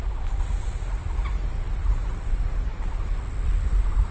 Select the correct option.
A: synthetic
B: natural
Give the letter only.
B